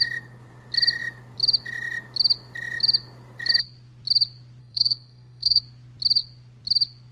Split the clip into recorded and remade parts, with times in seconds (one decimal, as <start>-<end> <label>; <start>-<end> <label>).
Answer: 0.0-4.6 recorded; 4.6-5.6 remade; 5.6-7.1 recorded